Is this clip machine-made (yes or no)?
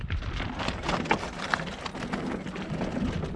no